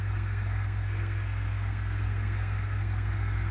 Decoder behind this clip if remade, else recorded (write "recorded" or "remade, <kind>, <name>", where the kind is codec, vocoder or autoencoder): remade, codec, SNAC